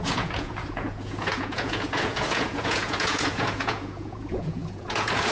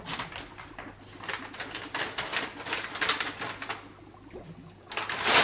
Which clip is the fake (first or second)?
first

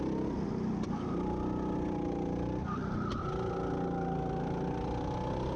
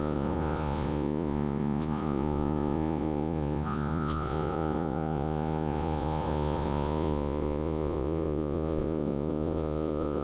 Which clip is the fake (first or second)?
second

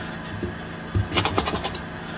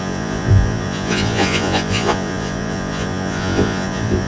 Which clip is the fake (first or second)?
second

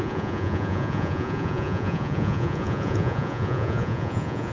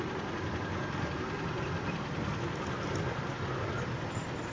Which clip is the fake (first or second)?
first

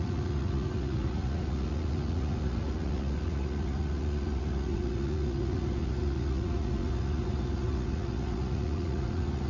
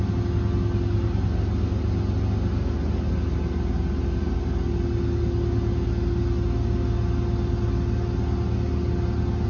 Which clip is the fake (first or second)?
first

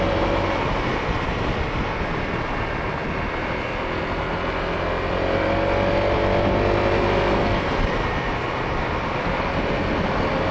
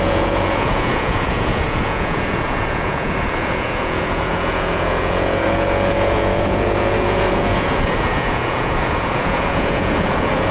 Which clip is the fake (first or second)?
second